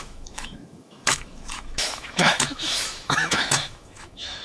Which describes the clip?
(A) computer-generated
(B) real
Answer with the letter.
A